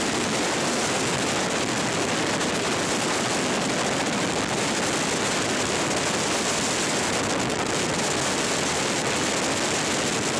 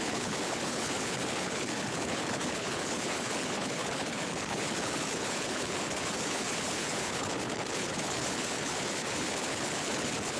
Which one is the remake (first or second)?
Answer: second